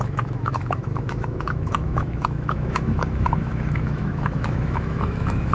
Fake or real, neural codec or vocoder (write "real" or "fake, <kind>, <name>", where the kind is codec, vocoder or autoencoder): fake, autoencoder, DAC-VAE